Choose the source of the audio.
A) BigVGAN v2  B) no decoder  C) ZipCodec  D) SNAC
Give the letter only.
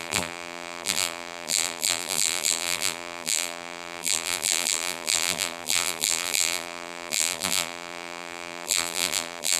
A